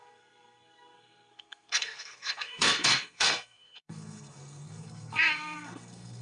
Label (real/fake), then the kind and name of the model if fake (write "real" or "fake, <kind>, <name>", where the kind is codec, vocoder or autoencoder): fake, codec, SNAC